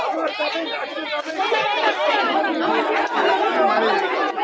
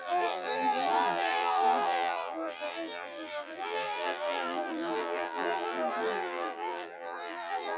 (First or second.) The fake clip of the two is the second